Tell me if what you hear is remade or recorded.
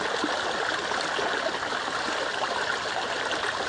recorded